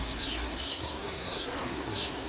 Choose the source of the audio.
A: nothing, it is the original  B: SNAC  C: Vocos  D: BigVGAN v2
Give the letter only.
B